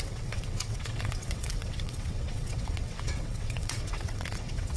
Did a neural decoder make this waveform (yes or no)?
yes